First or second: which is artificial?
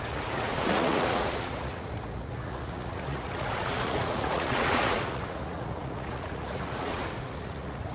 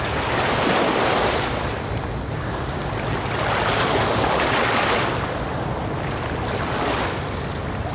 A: first